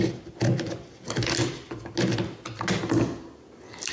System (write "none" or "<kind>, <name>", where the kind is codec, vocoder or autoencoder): none